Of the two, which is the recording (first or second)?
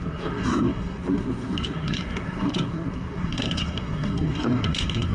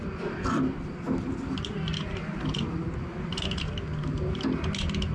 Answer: second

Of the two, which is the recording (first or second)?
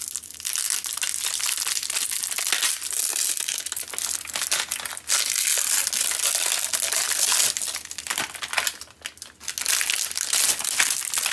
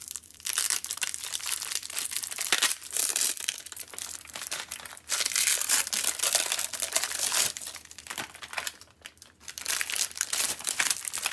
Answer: first